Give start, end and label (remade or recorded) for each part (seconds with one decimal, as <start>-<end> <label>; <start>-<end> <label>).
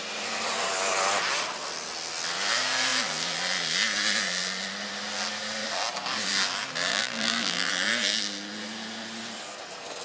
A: 0.0-6.9 recorded; 6.9-7.7 remade; 7.7-10.0 recorded